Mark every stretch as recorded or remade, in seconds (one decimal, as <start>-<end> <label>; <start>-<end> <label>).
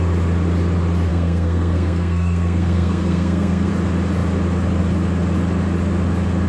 0.0-1.1 recorded; 1.1-3.7 remade; 3.7-6.5 recorded